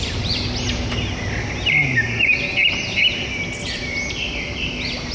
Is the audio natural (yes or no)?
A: yes